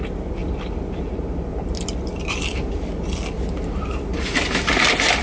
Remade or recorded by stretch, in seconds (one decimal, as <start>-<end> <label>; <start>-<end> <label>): 0.0-0.4 recorded; 0.4-1.0 remade; 1.0-1.5 recorded; 1.5-4.1 remade; 4.1-5.2 recorded